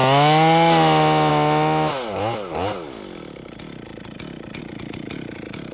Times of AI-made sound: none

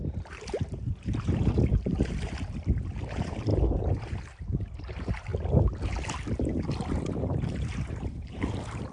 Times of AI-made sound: 0.0-5.3 (vocoder, BigVGAN v2); 7.2-8.9

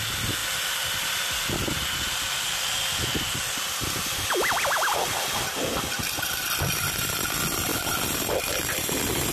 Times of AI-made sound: 0.4-2.8 (vocoder, BigVGAN v2); 7.7-8.4

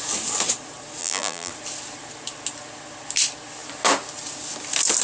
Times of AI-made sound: 1.0-1.5 (vocoder, BigVGAN v2)